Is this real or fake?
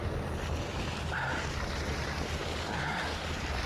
real